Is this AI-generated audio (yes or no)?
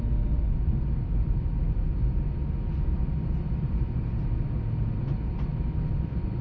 no